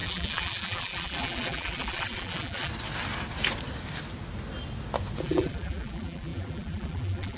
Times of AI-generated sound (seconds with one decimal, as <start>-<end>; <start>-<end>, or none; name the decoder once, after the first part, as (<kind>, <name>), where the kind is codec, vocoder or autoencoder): 0.0-2.7 (vocoder, BigVGAN v2); 5.2-7.4